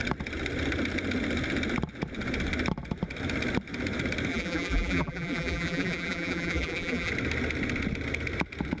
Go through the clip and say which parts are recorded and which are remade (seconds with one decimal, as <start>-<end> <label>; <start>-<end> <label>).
0.0-4.3 recorded; 4.3-7.1 remade; 7.1-8.8 recorded